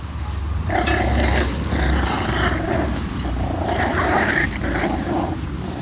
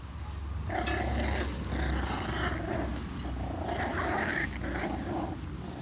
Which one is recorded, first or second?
second